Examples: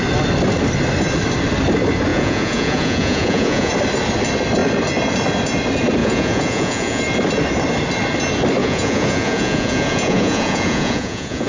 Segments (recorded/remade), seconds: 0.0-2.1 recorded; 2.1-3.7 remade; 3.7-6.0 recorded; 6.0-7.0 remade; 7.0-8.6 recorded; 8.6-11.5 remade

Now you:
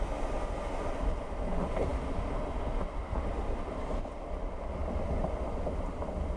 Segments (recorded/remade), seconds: 0.0-6.4 recorded

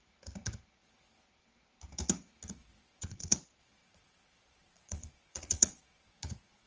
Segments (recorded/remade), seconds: 0.0-2.6 recorded; 2.6-6.7 remade

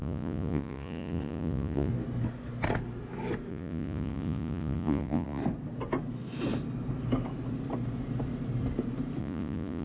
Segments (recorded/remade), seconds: 0.0-1.9 remade; 1.9-3.5 recorded; 3.5-5.4 remade; 5.4-9.2 recorded; 9.2-9.8 remade

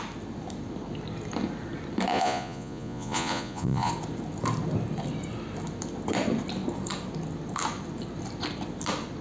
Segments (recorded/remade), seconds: 0.0-2.1 recorded; 2.1-3.9 remade; 3.9-9.2 recorded